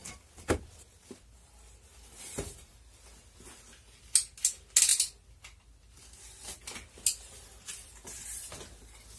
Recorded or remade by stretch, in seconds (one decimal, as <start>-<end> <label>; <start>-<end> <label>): 0.0-9.2 recorded